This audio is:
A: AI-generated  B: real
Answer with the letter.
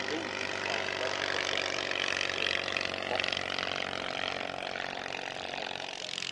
B